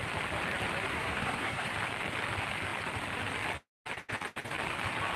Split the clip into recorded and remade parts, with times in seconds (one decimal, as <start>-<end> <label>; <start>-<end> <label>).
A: 0.0-0.9 recorded; 0.9-1.7 remade; 1.7-5.2 recorded

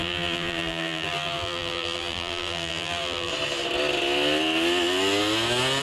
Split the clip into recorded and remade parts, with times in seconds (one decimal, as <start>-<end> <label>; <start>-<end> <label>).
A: 0.0-3.3 remade; 3.3-5.8 recorded

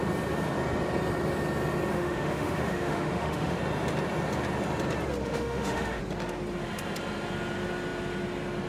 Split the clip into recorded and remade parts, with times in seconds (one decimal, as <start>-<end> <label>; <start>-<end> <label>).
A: 0.0-1.9 recorded; 1.9-3.6 remade; 3.6-5.2 recorded; 5.2-6.0 remade; 6.0-8.7 recorded

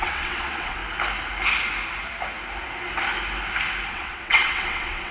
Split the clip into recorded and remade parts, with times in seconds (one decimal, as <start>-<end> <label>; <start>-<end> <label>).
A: 0.0-0.8 remade; 0.8-3.9 recorded; 3.9-5.1 remade

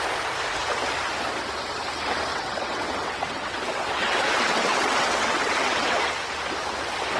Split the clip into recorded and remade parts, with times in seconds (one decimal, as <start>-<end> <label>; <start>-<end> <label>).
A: 0.0-2.3 recorded; 2.3-6.0 remade; 6.0-7.2 recorded

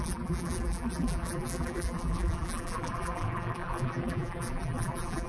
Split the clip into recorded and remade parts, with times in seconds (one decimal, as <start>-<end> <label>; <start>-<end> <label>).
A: 0.0-5.3 remade